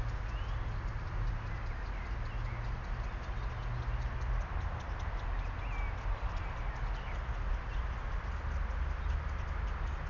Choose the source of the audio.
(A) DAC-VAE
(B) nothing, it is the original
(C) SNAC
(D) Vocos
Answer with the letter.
B